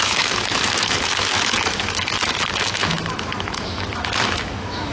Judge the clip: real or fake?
fake